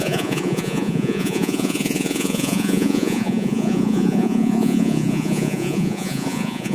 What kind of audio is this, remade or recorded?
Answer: remade